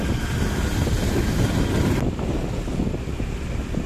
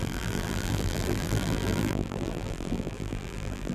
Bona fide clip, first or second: first